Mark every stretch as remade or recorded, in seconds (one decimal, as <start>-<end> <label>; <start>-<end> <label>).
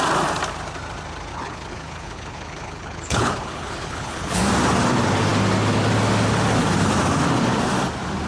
0.0-1.3 recorded; 1.3-4.4 remade; 4.4-8.3 recorded